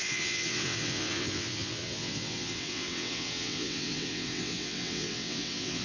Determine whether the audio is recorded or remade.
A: remade